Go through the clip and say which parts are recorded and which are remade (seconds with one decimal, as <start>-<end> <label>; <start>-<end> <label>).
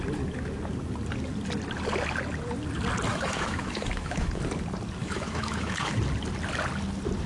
0.0-3.1 recorded; 3.1-4.4 remade; 4.4-5.0 recorded; 5.0-6.0 remade; 6.0-7.3 recorded